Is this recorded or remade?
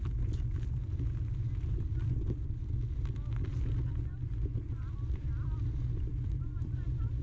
recorded